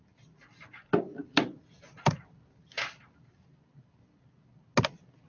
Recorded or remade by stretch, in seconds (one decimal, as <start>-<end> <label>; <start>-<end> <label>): 0.0-5.3 recorded